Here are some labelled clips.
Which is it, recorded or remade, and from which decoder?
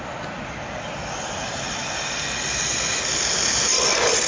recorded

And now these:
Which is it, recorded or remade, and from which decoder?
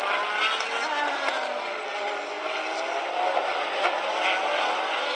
recorded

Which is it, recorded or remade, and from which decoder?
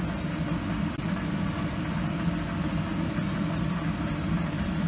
recorded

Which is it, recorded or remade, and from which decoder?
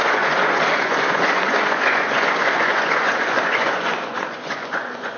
remade, vocoder, Vocos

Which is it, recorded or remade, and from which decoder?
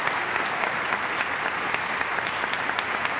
recorded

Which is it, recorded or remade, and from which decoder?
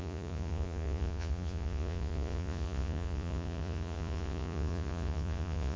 remade, vocoder, Vocos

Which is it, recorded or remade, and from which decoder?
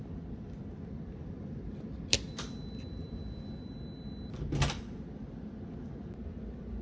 recorded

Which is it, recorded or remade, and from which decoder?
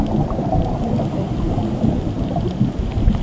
recorded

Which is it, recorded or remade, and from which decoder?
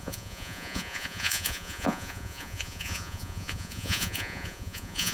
remade, vocoder, Vocos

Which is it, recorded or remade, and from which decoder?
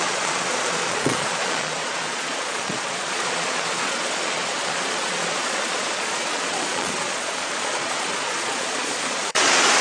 remade, vocoder, Vocos